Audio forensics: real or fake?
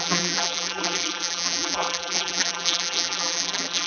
fake